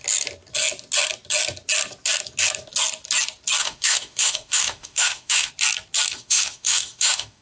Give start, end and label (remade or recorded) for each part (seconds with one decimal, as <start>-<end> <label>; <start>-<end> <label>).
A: 0.0-3.6 recorded; 3.6-5.5 remade; 5.5-6.1 recorded; 6.1-7.4 remade